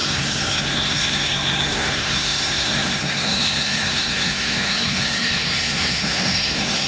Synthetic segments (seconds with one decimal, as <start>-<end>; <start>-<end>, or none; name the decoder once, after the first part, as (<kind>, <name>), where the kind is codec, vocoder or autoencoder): 0.0-6.9 (codec, SNAC)